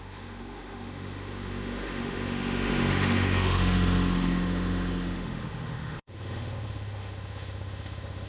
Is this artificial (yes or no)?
yes